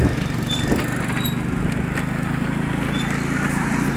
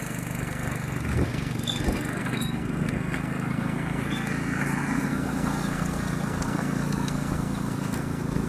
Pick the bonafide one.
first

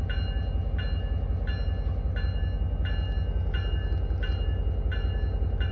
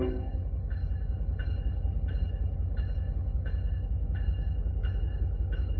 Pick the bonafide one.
first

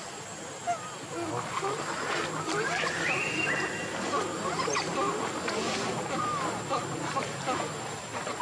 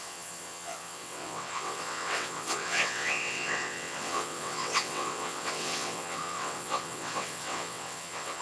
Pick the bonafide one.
first